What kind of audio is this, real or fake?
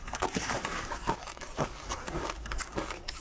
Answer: fake